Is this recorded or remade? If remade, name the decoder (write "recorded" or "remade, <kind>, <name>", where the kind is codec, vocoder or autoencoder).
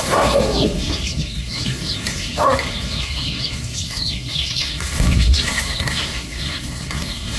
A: remade, codec, SNAC